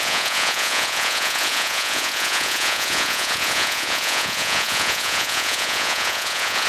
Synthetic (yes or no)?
yes